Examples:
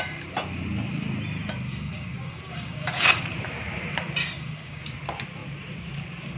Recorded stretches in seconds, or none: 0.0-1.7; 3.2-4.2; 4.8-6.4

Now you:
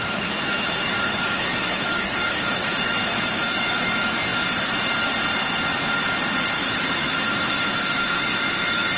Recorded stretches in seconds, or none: 4.3-6.6

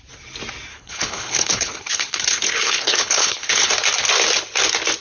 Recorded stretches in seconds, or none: 0.0-0.7; 3.7-5.0

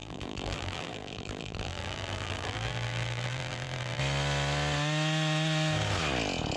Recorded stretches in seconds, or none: 4.0-6.6